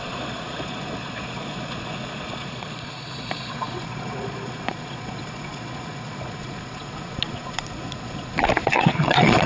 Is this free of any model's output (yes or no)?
no